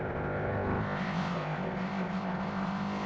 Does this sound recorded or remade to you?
remade